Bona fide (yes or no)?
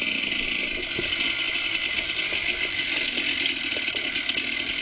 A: yes